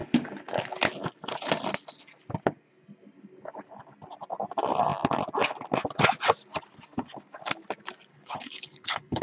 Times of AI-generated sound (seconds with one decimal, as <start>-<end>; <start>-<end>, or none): 8.1-9.2